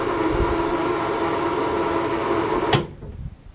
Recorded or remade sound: recorded